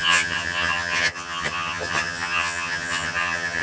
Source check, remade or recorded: remade